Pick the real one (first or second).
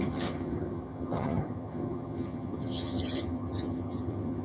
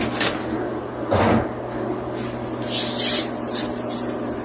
second